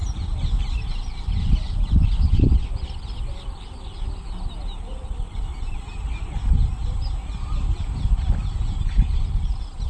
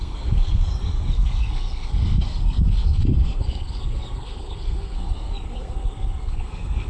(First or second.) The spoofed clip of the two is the second